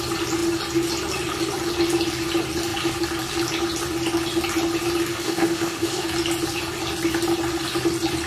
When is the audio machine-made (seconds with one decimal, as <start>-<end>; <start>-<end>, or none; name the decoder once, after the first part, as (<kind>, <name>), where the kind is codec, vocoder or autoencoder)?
5.1-6.1 (autoencoder, DAC-VAE)